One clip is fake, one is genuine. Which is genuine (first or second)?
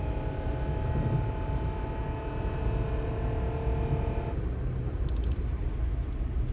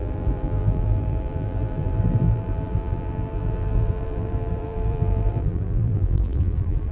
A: first